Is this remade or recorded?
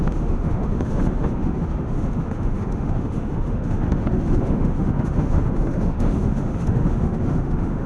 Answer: remade